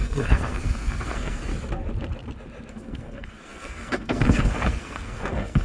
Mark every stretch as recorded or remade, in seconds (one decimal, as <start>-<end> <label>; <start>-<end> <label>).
0.0-1.5 remade; 1.5-2.7 recorded; 2.7-5.6 remade